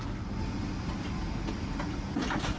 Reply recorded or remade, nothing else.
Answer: recorded